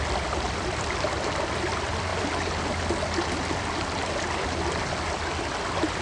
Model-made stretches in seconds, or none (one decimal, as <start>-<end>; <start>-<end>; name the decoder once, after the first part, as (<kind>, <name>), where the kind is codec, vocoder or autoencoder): none